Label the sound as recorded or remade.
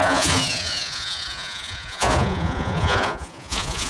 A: remade